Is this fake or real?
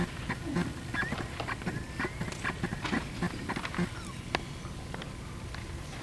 real